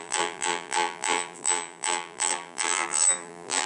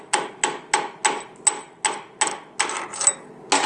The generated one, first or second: first